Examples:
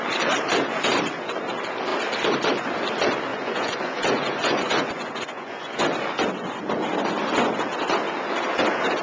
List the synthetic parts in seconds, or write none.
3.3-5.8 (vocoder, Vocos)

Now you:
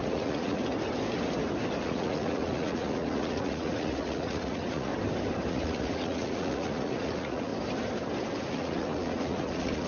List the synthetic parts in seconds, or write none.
0.0-0.6 (vocoder, Vocos); 1.8-4.9; 5.5-7.5; 8.4-9.9

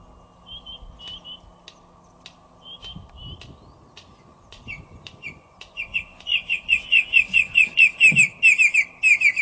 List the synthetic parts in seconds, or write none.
4.1-7.9 (vocoder, Vocos)

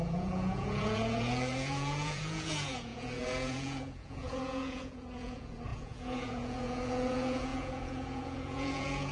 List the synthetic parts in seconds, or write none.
0.0-9.1 (vocoder, Vocos)

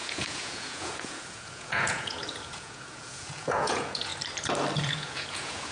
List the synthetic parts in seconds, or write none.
0.0-4.1 (vocoder, Vocos); 4.8-5.7

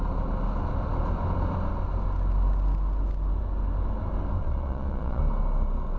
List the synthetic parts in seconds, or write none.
4.4-5.2 (vocoder, Vocos)